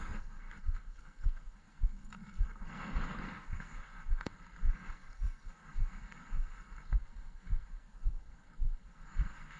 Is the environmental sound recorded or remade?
remade